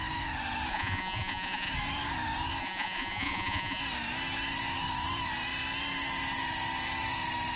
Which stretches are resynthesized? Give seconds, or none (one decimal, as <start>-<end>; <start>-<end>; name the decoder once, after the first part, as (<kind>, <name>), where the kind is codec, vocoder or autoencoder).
0.7-1.7 (vocoder, Vocos); 2.6-3.8